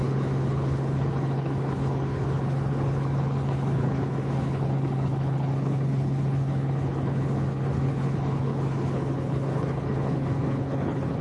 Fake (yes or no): yes